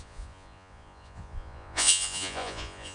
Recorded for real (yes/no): no